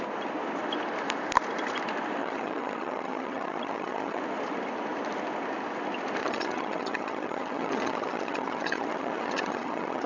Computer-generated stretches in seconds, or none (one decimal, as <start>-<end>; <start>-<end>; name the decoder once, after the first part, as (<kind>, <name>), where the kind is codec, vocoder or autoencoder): 2.2-4.2 (vocoder, HiFi-GAN); 6.2-10.1